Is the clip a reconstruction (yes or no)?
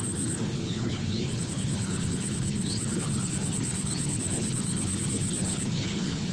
yes